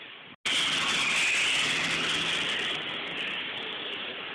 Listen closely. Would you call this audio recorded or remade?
recorded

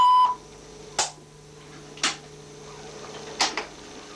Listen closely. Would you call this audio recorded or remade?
recorded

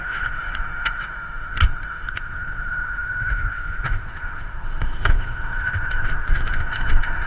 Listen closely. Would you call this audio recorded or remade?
remade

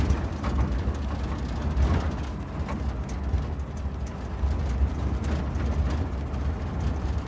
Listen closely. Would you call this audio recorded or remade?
recorded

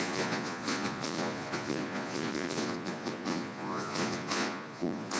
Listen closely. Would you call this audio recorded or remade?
remade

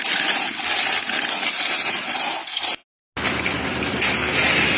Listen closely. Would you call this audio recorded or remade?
recorded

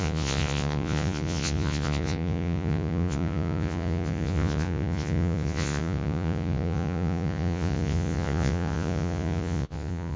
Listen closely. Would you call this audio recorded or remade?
remade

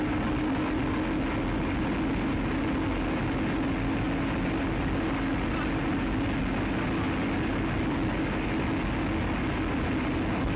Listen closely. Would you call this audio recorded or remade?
recorded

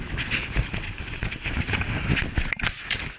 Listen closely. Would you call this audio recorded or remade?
recorded